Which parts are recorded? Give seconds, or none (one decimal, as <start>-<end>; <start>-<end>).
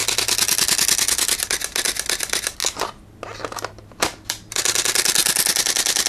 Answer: 0.0-6.1